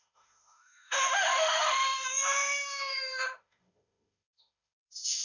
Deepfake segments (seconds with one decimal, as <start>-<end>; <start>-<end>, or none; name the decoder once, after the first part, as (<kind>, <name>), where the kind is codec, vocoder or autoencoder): 0.0-5.2 (autoencoder, DAC-VAE)